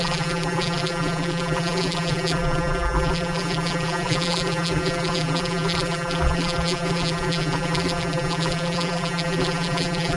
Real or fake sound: fake